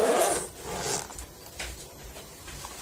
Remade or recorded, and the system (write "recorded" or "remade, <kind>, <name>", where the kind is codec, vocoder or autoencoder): recorded